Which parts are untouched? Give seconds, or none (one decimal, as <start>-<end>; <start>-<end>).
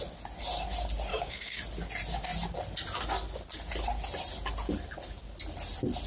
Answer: 0.0-1.1; 1.6-6.1